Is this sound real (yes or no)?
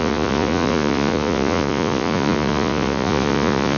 no